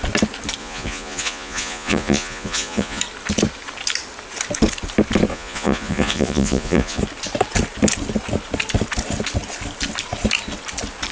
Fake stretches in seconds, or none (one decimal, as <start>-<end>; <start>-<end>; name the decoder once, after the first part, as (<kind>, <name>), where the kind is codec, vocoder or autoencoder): 0.6-3.0 (vocoder, Vocos); 5.3-7.0